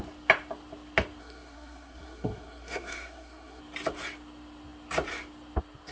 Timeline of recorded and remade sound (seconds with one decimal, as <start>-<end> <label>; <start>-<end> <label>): 0.0-1.2 recorded; 1.2-3.6 remade; 3.6-5.9 recorded